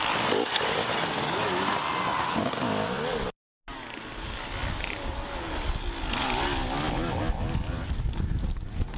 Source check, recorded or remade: recorded